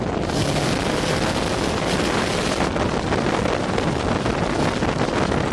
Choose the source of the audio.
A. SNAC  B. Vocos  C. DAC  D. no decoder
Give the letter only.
D